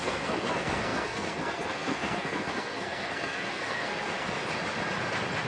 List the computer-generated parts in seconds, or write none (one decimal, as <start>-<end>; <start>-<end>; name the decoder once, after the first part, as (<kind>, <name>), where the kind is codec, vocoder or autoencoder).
0.0-4.4 (codec, SNAC)